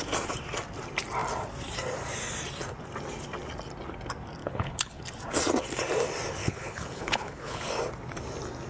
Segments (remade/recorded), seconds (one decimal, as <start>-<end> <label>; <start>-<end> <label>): 0.0-4.4 recorded; 4.4-5.0 remade; 5.0-6.4 recorded; 6.4-7.7 remade; 7.7-8.7 recorded